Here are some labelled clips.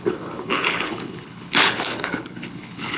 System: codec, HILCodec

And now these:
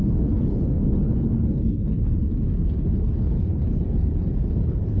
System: codec, HILCodec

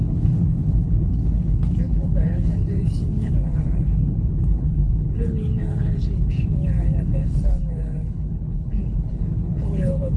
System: codec, HILCodec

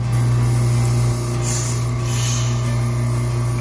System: none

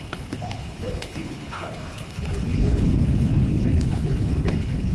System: codec, HILCodec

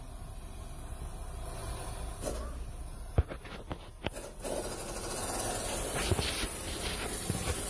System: none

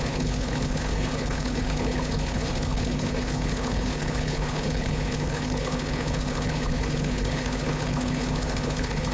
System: codec, HILCodec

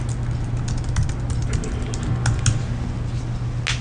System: none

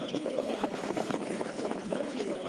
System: codec, HILCodec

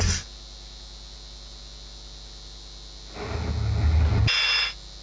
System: none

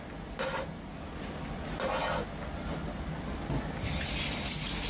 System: none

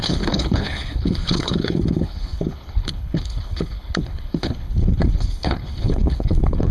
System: codec, HILCodec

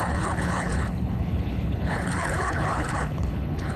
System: codec, HILCodec